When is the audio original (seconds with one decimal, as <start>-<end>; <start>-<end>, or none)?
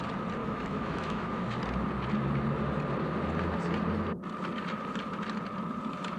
0.0-0.4; 1.6-6.2